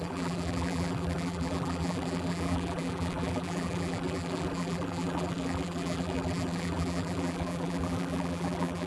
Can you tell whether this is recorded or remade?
remade